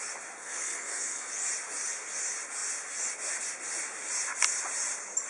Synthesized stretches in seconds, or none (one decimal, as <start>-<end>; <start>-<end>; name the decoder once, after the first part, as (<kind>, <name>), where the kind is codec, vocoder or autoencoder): 0.4-1.3 (codec, SNAC)